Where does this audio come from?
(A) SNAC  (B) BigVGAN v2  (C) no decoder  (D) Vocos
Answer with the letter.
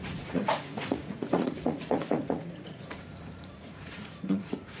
D